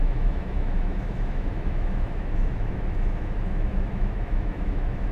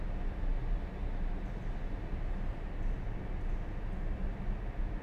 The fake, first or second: first